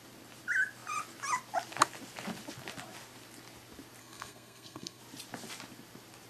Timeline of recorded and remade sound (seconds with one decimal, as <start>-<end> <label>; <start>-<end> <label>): 0.0-4.0 recorded; 4.0-5.0 remade; 5.0-6.3 recorded